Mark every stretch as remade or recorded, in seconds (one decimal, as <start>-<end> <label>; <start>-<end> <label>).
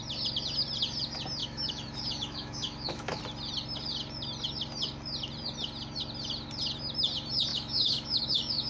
0.0-1.4 recorded; 1.4-3.2 remade; 3.2-7.5 recorded; 7.5-8.7 remade